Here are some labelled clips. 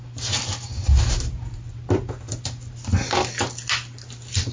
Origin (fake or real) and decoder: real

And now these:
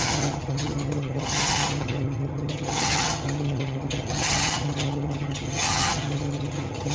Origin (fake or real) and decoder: fake, vocoder, HiFi-GAN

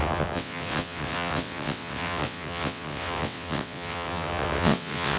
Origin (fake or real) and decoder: fake, vocoder, WaveNeXt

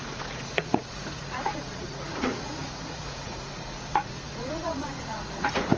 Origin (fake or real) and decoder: fake, vocoder, Vocos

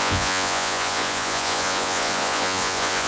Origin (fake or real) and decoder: fake, vocoder, Vocos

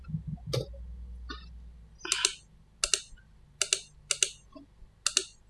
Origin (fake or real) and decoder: real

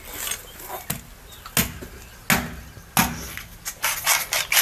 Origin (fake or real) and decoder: real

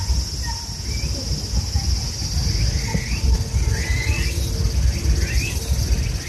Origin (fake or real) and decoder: real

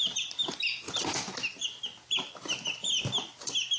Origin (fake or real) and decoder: real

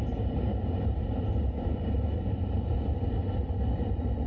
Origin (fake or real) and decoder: fake, vocoder, BigVGAN v2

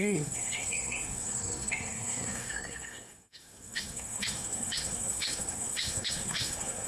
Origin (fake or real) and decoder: fake, codec, SNAC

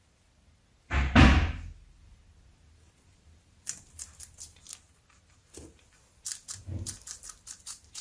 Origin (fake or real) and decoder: real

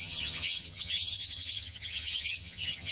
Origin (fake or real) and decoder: fake, vocoder, HiFi-GAN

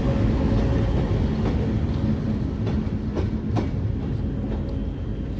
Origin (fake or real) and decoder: real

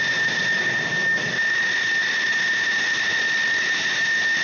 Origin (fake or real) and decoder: real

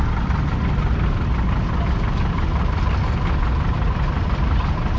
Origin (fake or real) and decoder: real